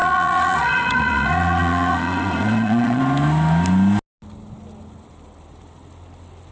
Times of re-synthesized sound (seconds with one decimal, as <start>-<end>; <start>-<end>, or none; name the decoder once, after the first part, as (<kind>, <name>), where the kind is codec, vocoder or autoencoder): 0.0-3.0 (vocoder, Vocos)